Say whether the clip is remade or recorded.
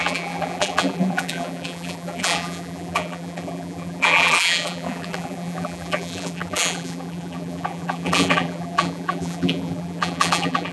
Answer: remade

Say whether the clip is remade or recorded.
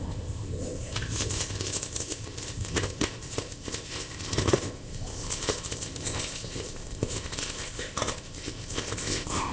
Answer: remade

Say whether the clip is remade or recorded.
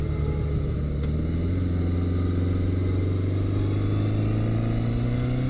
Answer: recorded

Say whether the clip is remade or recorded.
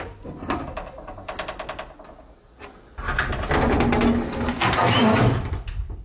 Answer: recorded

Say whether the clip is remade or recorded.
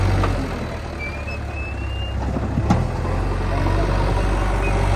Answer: recorded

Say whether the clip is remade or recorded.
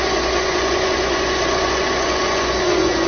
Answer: remade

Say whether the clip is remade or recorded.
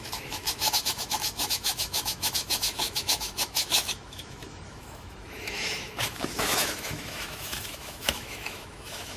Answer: remade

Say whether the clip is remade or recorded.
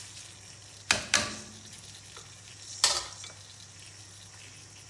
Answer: recorded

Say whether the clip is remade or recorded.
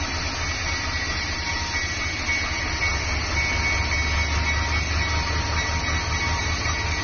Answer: recorded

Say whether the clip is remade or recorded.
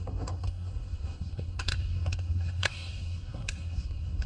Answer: remade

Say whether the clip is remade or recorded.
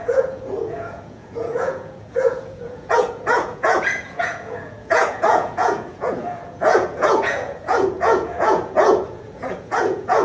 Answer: remade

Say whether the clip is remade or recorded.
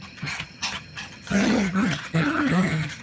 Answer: remade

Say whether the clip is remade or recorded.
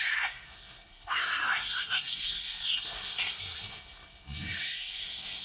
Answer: remade